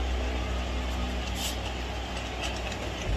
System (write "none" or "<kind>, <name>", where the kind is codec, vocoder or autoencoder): none